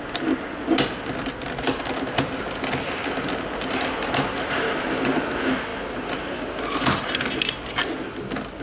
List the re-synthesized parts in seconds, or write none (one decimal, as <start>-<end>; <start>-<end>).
none